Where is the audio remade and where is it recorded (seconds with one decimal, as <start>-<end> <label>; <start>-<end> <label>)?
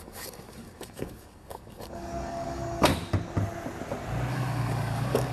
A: 0.0-2.9 remade; 2.9-4.3 recorded; 4.3-5.3 remade